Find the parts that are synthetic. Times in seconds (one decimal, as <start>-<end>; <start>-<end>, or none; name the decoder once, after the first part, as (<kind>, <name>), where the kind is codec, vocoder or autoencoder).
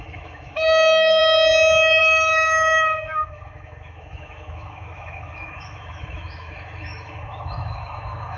0.0-1.2 (autoencoder, DAC-VAE); 2.0-8.4